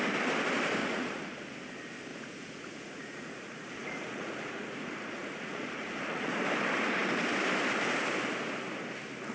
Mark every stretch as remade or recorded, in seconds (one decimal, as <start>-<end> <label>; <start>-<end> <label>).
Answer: 0.0-0.8 recorded; 0.8-1.5 remade; 1.5-2.1 recorded; 2.1-6.4 remade; 6.4-9.3 recorded